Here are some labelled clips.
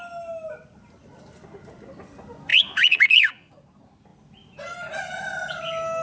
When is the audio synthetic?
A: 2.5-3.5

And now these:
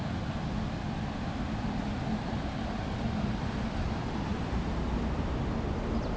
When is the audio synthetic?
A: none